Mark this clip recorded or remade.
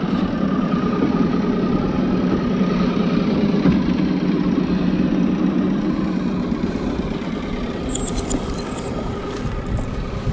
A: recorded